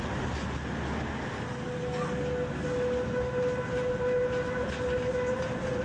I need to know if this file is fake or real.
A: real